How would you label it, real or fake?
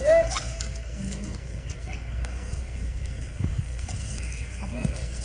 fake